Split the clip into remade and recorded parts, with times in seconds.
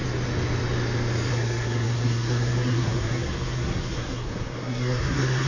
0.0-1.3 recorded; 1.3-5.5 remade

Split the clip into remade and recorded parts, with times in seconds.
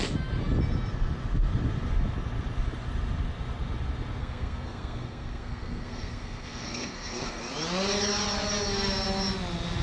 0.0-4.2 recorded; 4.2-7.4 remade; 7.4-9.8 recorded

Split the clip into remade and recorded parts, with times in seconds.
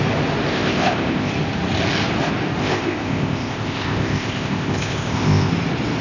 0.0-0.5 recorded; 0.5-1.3 remade; 1.3-2.6 recorded; 2.6-5.5 remade; 5.5-6.0 recorded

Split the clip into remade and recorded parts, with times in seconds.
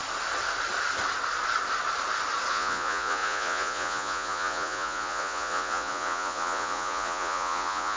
0.0-2.5 recorded; 2.5-8.0 remade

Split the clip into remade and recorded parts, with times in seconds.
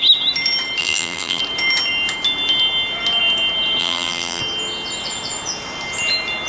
0.0-0.8 recorded; 0.8-1.4 remade; 1.4-3.8 recorded; 3.8-4.4 remade; 4.4-6.5 recorded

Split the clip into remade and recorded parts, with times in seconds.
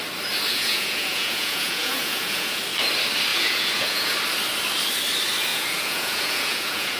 0.0-0.5 recorded; 0.5-2.6 remade; 2.6-3.3 recorded; 3.3-4.1 remade; 4.1-5.5 recorded; 5.5-7.0 remade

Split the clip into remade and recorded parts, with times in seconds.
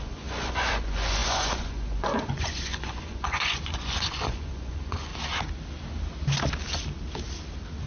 0.0-5.1 remade; 5.1-7.9 recorded